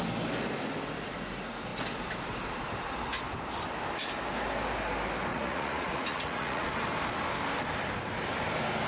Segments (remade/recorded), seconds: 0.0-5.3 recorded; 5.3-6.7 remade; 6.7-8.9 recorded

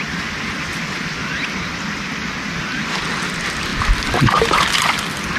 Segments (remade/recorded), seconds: 0.0-5.4 recorded

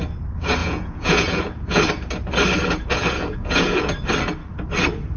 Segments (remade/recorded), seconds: 0.0-0.6 recorded; 0.6-1.9 remade; 1.9-2.9 recorded; 2.9-3.9 remade; 3.9-5.2 recorded

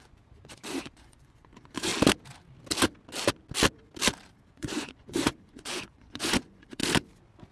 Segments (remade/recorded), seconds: 0.0-1.9 remade; 1.9-4.4 recorded; 4.4-6.8 remade; 6.8-7.5 recorded

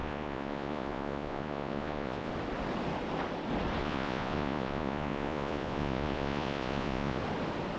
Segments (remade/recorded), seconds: 0.0-2.3 remade; 2.3-3.8 recorded; 3.8-7.2 remade; 7.2-7.8 recorded

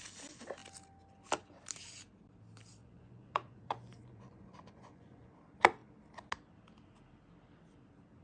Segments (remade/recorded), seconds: 0.0-2.8 recorded; 2.8-5.3 remade; 5.3-8.2 recorded